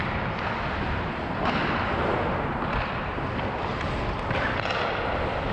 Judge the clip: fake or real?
real